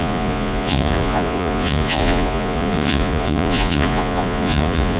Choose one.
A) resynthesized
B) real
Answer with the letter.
A